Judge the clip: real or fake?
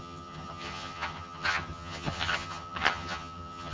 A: fake